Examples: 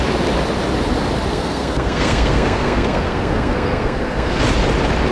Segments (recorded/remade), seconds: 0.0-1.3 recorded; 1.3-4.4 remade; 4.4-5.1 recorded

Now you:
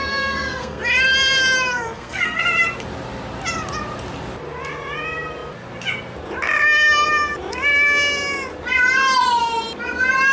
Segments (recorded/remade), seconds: 0.0-0.8 remade; 0.8-1.7 recorded; 1.7-2.4 remade; 2.4-10.3 recorded

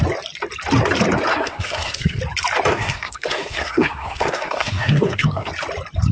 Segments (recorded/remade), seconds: 0.0-1.3 recorded; 1.3-2.2 remade; 2.2-2.7 recorded; 2.7-5.5 remade; 5.5-6.1 recorded

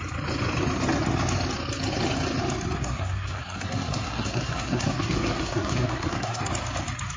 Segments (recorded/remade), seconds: 0.0-2.8 recorded; 2.8-6.5 remade; 6.5-7.2 recorded

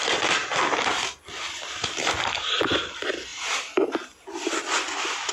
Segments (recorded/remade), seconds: 0.0-5.3 recorded

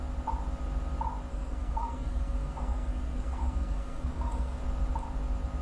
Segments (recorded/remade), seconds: 0.0-1.3 recorded; 1.3-4.6 remade; 4.6-5.6 recorded